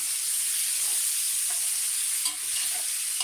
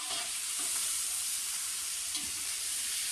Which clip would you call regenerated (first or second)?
second